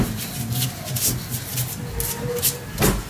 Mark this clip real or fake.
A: real